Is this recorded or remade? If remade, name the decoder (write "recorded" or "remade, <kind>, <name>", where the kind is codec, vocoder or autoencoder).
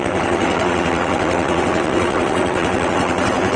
remade, vocoder, WaveNeXt